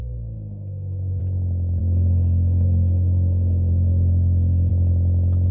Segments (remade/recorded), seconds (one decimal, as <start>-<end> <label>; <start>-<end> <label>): 0.0-1.2 remade; 1.2-1.8 recorded; 1.8-4.7 remade; 4.7-5.5 recorded